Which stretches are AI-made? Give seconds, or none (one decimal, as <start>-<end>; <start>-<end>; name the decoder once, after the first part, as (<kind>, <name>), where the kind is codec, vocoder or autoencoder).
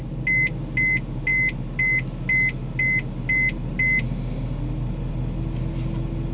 none